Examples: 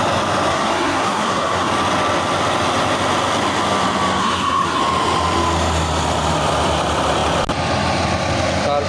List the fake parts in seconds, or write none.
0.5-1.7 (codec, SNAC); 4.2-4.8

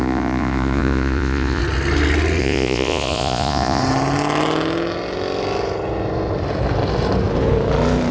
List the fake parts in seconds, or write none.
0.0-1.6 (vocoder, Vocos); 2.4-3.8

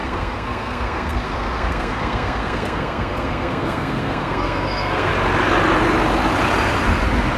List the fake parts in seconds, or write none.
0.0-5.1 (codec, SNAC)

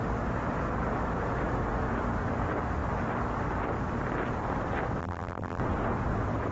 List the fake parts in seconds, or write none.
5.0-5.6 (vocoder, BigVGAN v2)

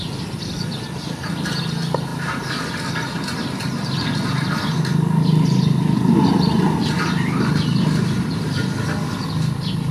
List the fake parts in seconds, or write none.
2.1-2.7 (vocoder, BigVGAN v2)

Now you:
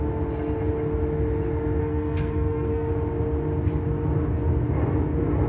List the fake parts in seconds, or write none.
1.8-2.9 (codec, SNAC)